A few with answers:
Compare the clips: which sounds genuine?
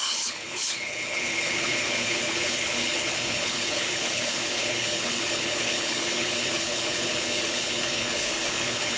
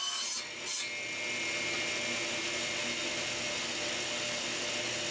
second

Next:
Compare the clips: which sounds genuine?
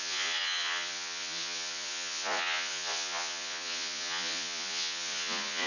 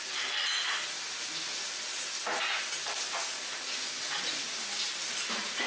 second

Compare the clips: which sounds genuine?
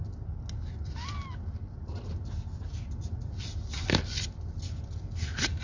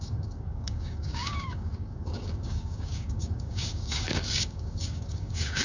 first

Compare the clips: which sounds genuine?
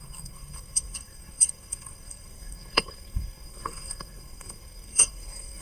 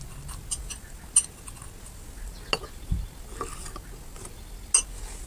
second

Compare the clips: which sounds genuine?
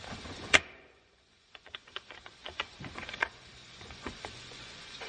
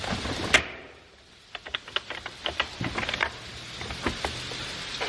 second